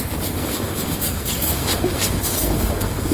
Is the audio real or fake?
fake